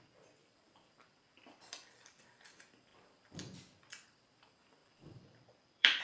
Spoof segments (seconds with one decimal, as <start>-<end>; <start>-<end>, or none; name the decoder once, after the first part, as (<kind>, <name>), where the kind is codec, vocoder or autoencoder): 0.4-2.2 (vocoder, BigVGAN v2); 4.8-6.0